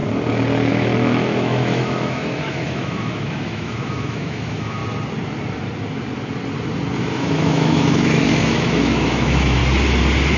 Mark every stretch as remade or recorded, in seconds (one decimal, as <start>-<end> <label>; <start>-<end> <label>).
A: 0.0-0.7 recorded; 0.7-4.8 remade; 4.8-7.0 recorded; 7.0-9.6 remade; 9.6-10.4 recorded